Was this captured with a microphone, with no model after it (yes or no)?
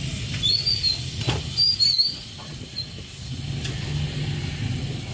yes